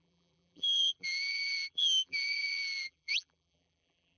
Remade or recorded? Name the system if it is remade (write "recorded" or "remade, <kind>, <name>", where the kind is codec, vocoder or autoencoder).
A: remade, vocoder, BigVGAN v2